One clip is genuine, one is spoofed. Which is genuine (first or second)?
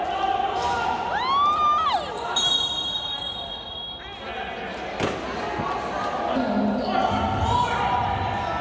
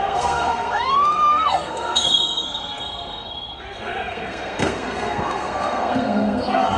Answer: first